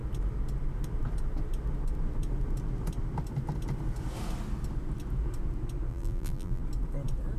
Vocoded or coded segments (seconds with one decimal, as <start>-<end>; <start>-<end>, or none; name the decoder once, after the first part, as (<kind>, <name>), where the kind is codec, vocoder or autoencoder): 5.9-6.6 (vocoder, BigVGAN v2)